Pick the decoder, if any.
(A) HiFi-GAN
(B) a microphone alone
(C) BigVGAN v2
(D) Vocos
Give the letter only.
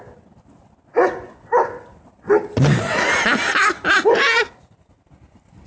B